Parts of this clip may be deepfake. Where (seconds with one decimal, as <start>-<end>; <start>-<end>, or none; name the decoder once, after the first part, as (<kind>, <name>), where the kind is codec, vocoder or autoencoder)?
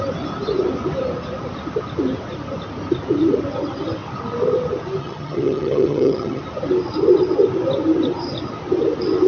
5.0-6.4 (vocoder, HiFi-GAN)